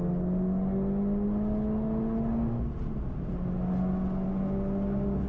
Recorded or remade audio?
recorded